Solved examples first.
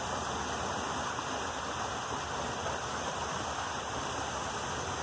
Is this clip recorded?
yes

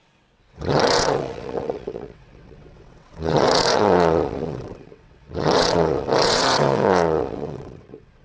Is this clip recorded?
no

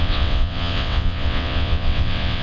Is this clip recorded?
no